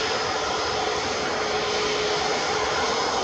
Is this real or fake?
real